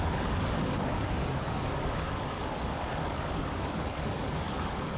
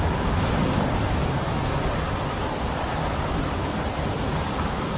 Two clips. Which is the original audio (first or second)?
second